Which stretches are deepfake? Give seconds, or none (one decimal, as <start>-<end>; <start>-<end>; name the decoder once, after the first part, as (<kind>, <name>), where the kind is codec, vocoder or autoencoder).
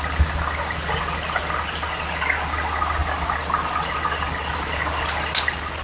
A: none